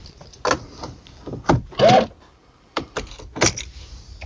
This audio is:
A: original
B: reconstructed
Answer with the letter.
A